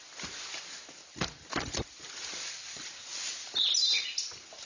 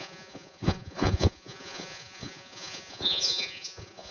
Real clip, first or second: first